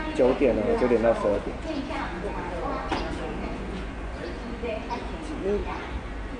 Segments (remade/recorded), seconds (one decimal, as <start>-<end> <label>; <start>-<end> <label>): 0.0-1.3 recorded; 1.3-5.1 remade; 5.1-5.6 recorded; 5.6-6.4 remade